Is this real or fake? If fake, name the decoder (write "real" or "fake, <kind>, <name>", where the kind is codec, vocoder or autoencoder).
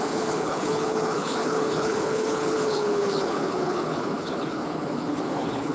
fake, codec, HILCodec